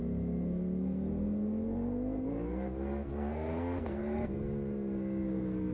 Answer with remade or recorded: remade